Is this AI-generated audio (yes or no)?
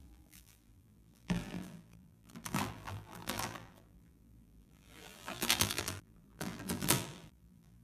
yes